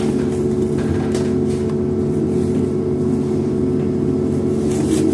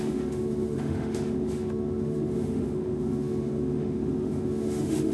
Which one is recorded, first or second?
first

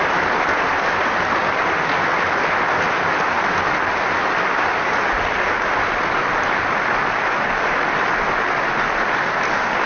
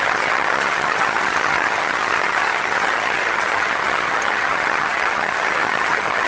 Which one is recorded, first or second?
first